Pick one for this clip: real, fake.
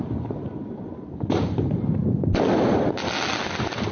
real